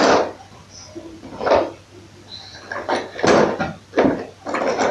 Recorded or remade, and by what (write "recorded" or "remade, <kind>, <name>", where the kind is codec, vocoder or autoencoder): recorded